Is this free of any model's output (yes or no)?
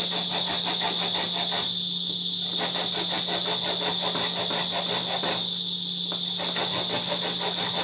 yes